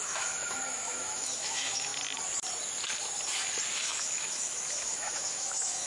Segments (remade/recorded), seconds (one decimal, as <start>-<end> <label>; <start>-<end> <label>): 0.0-1.9 remade; 1.9-3.8 recorded; 3.8-5.9 remade

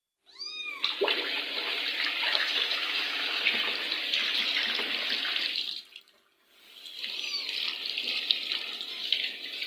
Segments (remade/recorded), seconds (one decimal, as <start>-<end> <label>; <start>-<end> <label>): 0.0-2.3 recorded; 2.3-3.4 remade; 3.4-9.7 recorded

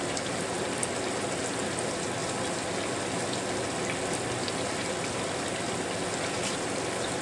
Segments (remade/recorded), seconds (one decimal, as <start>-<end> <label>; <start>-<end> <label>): 0.0-7.2 recorded

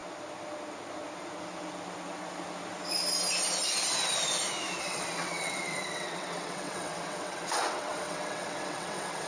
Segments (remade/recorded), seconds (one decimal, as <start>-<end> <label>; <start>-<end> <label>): 0.0-4.8 recorded; 4.8-9.3 remade

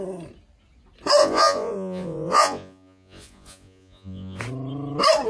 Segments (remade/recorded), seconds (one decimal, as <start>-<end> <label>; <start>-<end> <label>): 0.0-1.2 recorded; 1.2-4.4 remade; 4.4-5.3 recorded

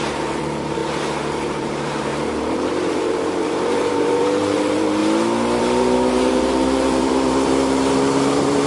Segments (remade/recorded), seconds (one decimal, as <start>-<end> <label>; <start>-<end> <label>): 0.0-0.8 remade; 0.8-1.6 recorded; 1.6-5.0 remade; 5.0-5.6 recorded; 5.6-8.7 remade

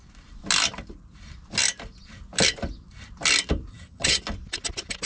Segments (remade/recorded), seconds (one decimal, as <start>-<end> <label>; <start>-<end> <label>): 0.0-3.7 recorded; 3.7-4.2 remade; 4.2-5.1 recorded

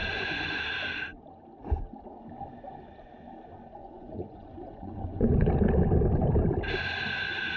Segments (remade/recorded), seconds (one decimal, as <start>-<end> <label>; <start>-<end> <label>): 0.0-0.6 remade; 0.6-3.8 recorded; 3.8-5.5 remade; 5.5-7.6 recorded